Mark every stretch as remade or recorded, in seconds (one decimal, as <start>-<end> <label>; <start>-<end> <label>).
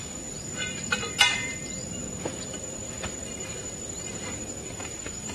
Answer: 0.0-5.3 remade